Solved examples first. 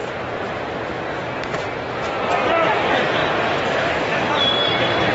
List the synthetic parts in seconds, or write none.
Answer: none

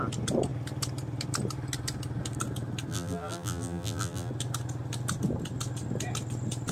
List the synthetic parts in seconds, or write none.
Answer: 2.9-4.3 (vocoder, BigVGAN v2)

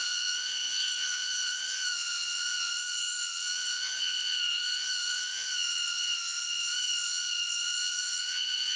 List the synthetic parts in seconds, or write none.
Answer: 0.0-8.8 (vocoder, Vocos)